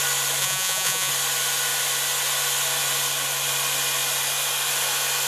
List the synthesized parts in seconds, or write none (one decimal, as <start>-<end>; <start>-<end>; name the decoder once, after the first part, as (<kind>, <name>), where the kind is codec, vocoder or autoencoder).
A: 0.4-1.1 (vocoder, Vocos)